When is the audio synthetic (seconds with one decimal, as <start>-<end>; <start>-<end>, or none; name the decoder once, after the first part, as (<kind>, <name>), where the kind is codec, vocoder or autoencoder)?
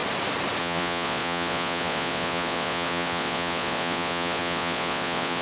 0.6-5.4 (vocoder, Vocos)